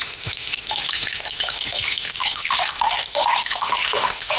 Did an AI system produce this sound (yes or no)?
yes